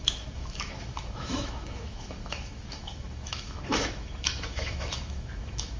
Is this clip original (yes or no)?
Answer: no